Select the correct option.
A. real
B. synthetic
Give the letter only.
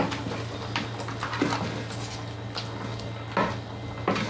A